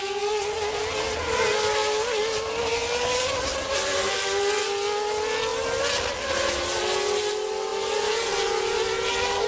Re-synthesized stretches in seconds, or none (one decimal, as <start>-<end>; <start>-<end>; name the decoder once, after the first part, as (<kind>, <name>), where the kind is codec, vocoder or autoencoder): none